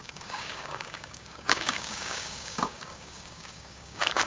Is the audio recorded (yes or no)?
no